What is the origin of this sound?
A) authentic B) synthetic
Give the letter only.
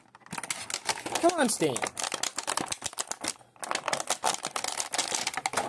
A